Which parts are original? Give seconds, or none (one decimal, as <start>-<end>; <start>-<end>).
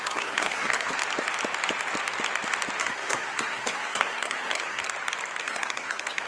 1.0-2.8; 4.8-5.4